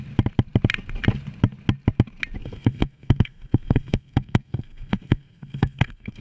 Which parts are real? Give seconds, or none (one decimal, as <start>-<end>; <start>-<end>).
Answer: 0.0-2.4